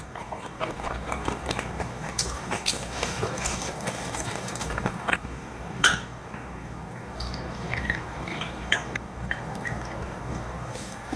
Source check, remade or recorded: remade